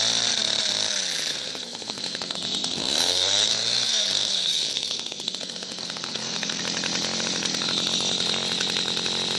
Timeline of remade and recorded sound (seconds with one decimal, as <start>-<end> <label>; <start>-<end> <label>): 0.0-1.3 recorded; 1.3-6.6 remade; 6.6-9.4 recorded